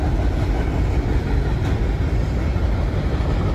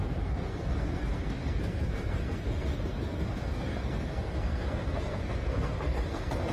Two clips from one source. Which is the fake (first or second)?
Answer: second